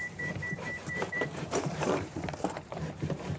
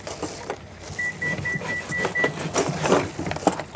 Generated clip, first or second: first